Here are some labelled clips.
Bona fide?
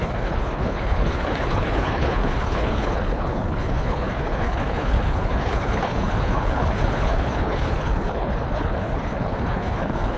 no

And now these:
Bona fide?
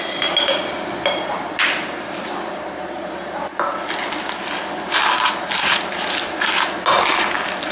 yes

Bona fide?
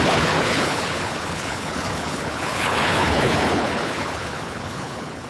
no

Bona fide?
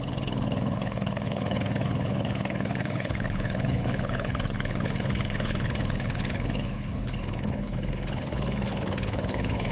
no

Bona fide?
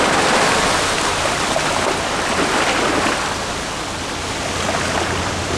yes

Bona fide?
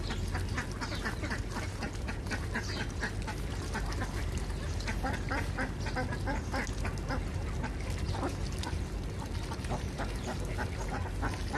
yes